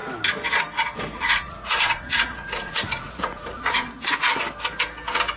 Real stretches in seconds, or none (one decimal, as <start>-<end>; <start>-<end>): 0.0-1.2; 4.4-5.4